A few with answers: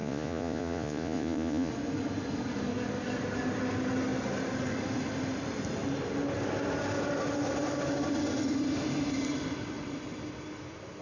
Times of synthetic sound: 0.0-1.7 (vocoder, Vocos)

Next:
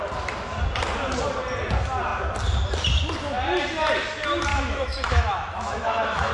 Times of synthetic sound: 4.5-6.3 (autoencoder, DAC-VAE)